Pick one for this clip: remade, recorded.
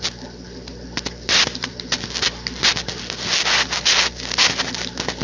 recorded